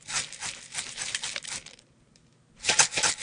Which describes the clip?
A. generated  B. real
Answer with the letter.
B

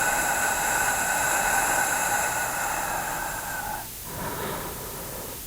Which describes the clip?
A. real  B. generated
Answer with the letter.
A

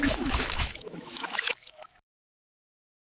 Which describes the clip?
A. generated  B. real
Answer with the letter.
A